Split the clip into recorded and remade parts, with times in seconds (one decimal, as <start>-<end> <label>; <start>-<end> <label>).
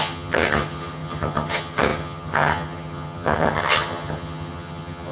0.0-5.1 remade